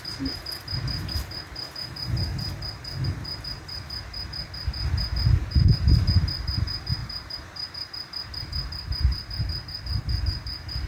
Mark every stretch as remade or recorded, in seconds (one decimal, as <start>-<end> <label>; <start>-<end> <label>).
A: 0.0-7.0 recorded; 7.0-10.2 remade; 10.2-10.9 recorded